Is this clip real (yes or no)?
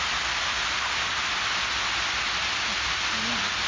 yes